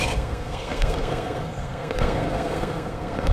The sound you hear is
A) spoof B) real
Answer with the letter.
A